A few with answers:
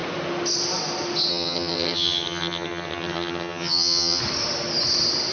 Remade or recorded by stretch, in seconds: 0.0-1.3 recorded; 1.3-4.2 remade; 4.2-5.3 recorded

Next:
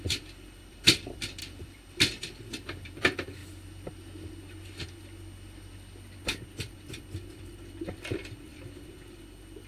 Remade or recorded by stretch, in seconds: 0.0-3.4 remade; 3.4-6.6 recorded; 6.6-9.7 remade

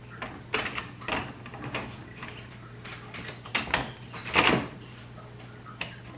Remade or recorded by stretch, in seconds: 0.0-1.5 recorded; 1.5-3.5 remade; 3.5-4.2 recorded; 4.2-5.0 remade; 5.0-6.2 recorded

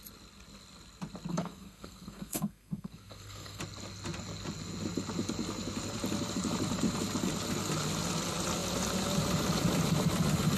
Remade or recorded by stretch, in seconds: 0.0-1.3 recorded; 1.3-3.6 remade; 3.6-10.6 recorded

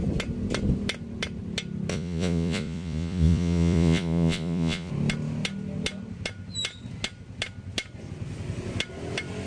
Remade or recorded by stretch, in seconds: 0.0-1.9 recorded; 1.9-4.9 remade; 4.9-9.5 recorded